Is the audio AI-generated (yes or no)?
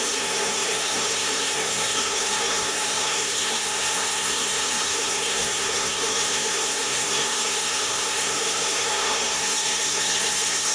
yes